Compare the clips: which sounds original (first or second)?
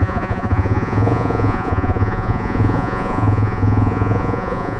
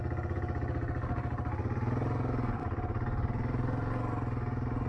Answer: second